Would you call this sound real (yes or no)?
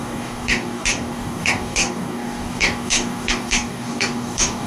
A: no